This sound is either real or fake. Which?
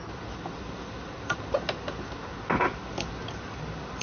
real